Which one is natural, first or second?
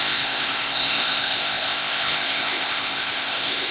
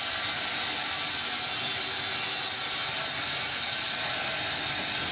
second